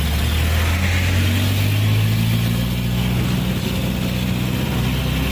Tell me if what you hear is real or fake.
real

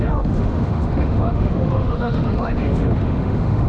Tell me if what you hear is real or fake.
fake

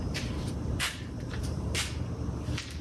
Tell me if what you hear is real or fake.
fake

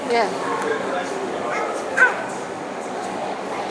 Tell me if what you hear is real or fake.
fake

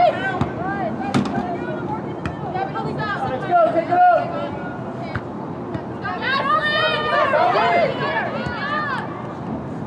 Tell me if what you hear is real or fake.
real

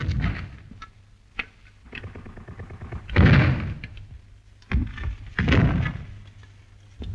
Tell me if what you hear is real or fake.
real